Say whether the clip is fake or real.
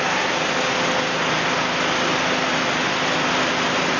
real